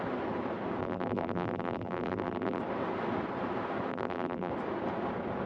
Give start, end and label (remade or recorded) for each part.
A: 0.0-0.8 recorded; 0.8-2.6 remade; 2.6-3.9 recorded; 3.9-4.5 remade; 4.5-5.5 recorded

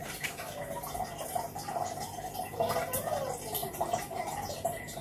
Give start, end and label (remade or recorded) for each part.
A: 0.0-0.6 remade; 0.6-3.6 recorded; 3.6-5.0 remade

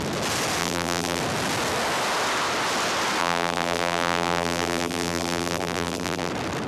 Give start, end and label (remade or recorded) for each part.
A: 0.0-0.6 recorded; 0.6-1.2 remade; 1.2-3.2 recorded; 3.2-6.3 remade; 6.3-6.7 recorded

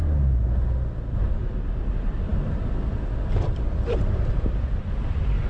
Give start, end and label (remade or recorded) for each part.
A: 0.0-1.3 recorded; 1.3-5.5 remade